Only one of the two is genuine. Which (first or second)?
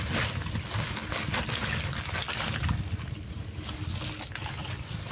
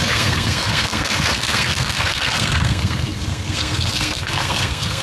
first